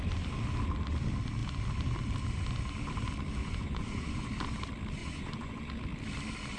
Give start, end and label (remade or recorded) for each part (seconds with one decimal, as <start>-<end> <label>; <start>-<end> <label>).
0.0-3.4 recorded; 3.4-4.3 remade; 4.3-5.0 recorded; 5.0-5.7 remade; 5.7-6.6 recorded